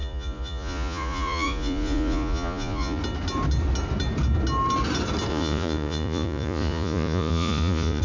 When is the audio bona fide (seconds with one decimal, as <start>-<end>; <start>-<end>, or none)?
3.0-5.3